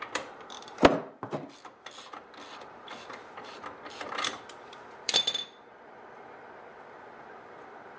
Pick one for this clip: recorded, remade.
remade